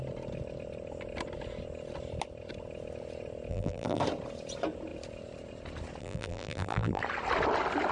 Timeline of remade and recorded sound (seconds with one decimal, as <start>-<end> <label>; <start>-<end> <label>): 0.0-3.5 recorded; 3.5-4.0 remade; 4.0-6.0 recorded; 6.0-7.0 remade; 7.0-7.9 recorded

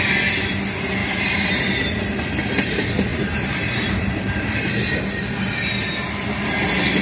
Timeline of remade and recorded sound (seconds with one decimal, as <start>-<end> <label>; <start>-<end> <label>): 0.0-1.0 recorded; 1.0-1.5 remade; 1.5-3.1 recorded; 3.1-4.7 remade; 4.7-7.0 recorded

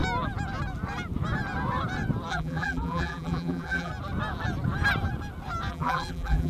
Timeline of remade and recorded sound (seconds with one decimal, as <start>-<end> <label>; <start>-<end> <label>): 0.0-2.3 recorded; 2.3-3.9 remade; 3.9-5.7 recorded; 5.7-6.5 remade